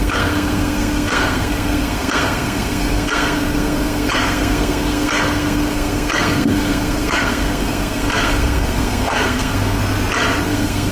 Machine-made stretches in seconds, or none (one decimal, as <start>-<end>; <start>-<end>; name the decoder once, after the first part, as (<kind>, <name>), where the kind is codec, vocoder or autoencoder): 0.0-9.8 (codec, SNAC); 10.4-10.9